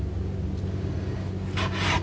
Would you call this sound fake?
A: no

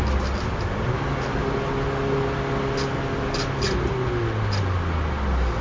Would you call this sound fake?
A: no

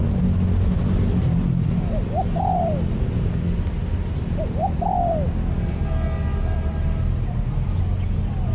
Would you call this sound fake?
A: no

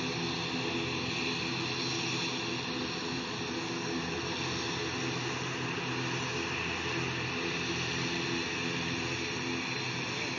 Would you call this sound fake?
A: no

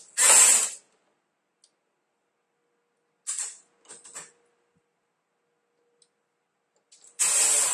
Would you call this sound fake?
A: no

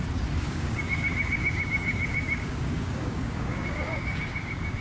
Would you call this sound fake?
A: yes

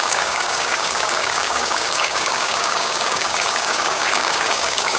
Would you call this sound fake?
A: yes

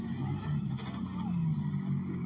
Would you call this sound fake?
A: no